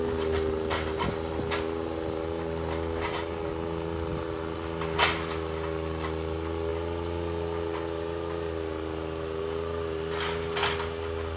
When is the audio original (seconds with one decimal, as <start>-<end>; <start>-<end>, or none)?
0.0-11.4